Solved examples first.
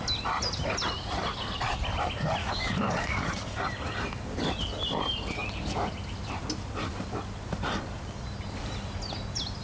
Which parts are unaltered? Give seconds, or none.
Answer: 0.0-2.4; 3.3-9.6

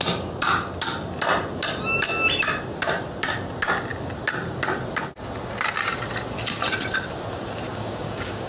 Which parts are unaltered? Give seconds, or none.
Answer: 0.0-7.7

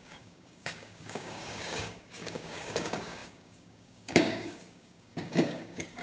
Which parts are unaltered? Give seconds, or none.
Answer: none

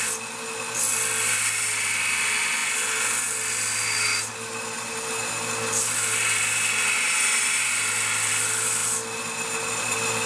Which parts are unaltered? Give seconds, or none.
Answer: 0.0-10.3

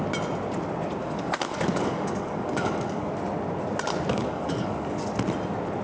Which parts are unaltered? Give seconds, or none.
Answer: 0.0-1.0; 3.1-4.1; 5.1-5.8

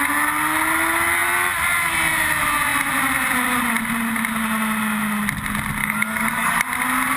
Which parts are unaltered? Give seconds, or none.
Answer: 0.0-5.8; 6.6-7.2